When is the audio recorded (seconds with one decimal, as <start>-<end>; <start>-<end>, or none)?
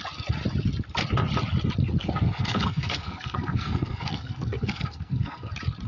0.0-2.0; 5.5-5.9